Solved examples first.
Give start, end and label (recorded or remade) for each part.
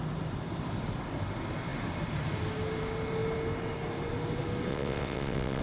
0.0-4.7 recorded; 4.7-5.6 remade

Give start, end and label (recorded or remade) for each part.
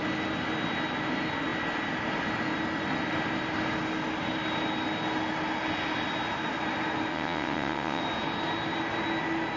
0.0-7.1 recorded; 7.1-8.0 remade; 8.0-9.6 recorded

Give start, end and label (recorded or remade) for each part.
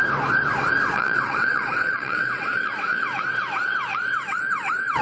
0.0-0.9 recorded; 0.9-5.0 remade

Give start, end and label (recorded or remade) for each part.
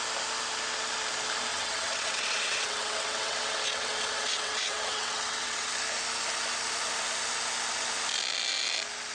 0.0-1.5 recorded; 1.5-5.7 remade; 5.7-9.1 recorded